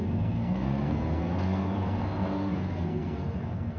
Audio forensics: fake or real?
fake